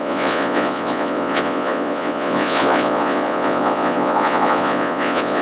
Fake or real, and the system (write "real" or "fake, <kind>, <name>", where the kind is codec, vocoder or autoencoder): fake, vocoder, Vocos